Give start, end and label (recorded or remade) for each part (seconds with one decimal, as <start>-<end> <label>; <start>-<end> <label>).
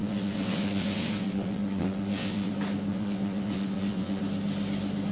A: 0.0-2.5 remade; 2.5-2.9 recorded; 2.9-4.2 remade; 4.2-5.1 recorded